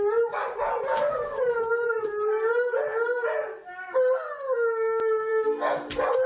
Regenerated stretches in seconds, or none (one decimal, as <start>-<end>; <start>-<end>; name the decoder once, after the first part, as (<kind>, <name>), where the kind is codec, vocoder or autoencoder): 0.9-1.7 (codec, DAC)